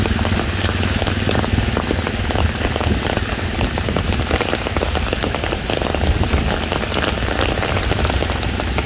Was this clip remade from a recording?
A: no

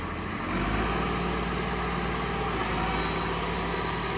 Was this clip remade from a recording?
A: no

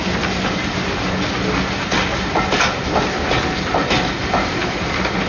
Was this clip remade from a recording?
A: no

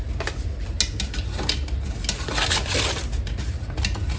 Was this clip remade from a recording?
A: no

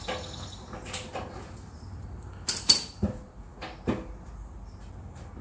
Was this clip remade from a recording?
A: no